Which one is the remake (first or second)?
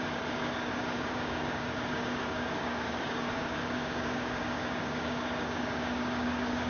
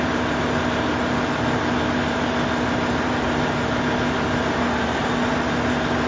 first